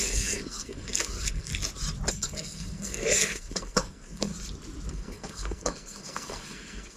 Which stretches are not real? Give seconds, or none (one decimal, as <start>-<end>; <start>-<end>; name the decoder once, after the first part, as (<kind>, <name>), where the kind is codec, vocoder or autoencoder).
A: 0.0-1.5 (codec, SNAC); 2.1-4.3; 4.9-7.0